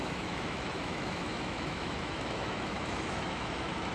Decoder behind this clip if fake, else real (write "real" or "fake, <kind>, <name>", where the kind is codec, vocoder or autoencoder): fake, autoencoder, DAC-VAE